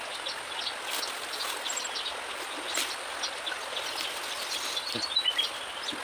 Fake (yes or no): no